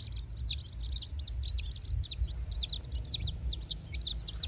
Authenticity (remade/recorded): recorded